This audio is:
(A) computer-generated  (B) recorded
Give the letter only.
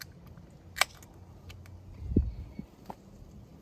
B